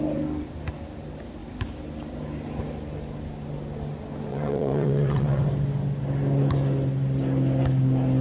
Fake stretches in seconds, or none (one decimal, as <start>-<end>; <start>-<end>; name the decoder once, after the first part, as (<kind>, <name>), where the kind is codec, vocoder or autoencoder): 4.3-5.4 (vocoder, WaveNeXt)